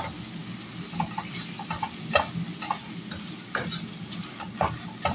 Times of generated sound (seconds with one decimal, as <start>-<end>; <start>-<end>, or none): none